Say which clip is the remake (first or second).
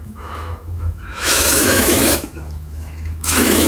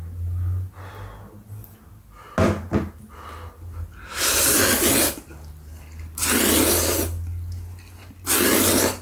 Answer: first